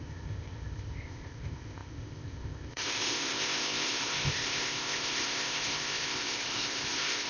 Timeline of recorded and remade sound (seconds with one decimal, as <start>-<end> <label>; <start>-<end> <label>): 0.0-7.3 remade